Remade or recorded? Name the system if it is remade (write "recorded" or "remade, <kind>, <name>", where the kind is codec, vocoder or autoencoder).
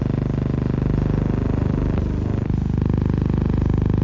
recorded